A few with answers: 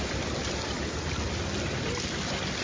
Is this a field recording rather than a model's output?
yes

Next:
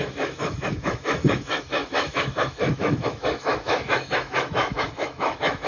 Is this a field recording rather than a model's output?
no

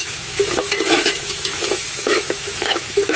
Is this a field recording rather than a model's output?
no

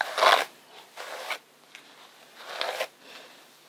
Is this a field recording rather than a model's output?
yes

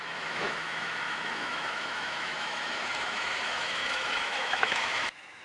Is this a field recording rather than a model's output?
no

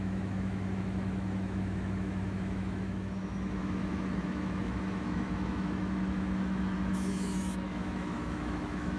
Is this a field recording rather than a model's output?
no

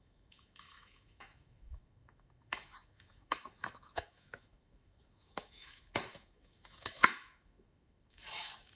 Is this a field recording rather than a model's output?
no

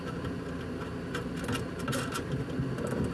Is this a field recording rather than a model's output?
yes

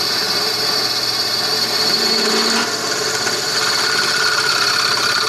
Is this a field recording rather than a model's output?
yes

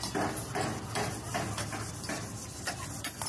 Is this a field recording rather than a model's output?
yes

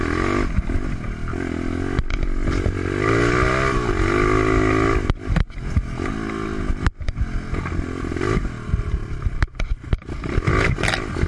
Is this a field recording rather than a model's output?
yes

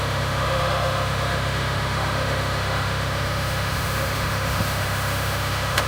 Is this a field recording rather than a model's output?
no